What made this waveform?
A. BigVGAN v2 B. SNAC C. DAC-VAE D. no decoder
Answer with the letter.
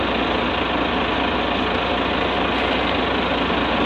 D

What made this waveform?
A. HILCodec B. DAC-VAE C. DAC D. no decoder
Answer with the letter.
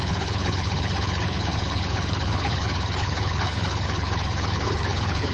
A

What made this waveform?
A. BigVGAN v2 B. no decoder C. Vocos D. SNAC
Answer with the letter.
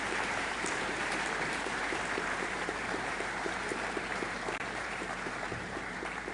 A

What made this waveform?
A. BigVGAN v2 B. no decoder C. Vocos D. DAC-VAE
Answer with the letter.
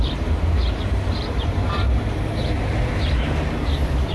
A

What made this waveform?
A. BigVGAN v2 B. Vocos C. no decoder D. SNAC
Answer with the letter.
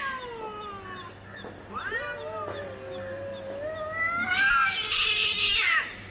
C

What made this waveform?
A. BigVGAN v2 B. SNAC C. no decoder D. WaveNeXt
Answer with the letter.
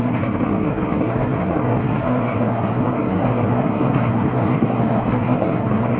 B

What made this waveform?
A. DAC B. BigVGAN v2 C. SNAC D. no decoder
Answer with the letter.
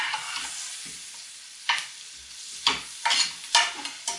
D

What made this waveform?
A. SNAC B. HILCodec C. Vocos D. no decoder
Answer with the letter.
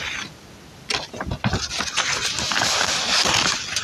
D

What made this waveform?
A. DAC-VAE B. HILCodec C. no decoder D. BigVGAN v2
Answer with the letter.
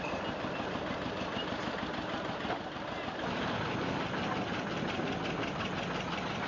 D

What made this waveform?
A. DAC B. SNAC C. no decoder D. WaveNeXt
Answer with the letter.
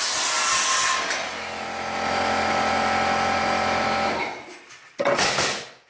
C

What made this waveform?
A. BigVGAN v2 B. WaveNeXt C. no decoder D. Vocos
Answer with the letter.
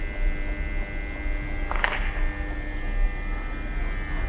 C